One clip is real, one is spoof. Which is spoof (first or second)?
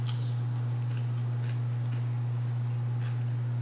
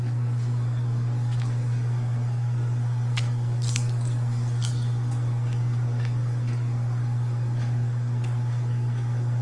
second